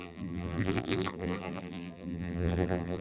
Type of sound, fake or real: fake